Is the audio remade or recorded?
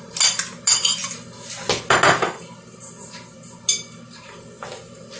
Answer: recorded